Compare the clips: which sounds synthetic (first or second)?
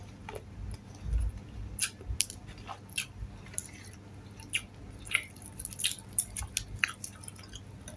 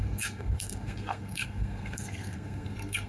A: second